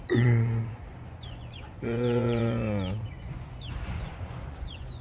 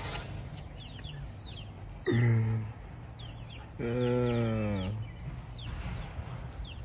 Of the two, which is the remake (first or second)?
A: first